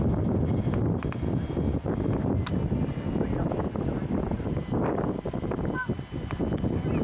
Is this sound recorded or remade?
recorded